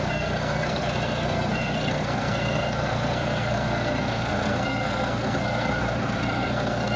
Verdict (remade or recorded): remade